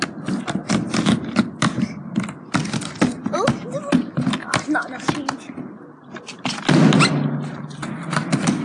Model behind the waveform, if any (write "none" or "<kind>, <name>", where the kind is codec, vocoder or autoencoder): none